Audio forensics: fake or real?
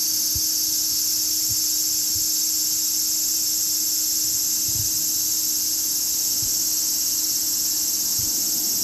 real